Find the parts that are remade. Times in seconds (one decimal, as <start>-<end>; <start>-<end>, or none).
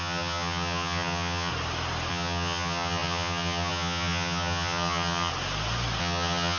0.0-1.5; 2.1-5.3; 6.0-6.6